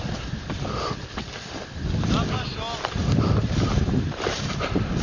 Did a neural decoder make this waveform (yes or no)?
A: no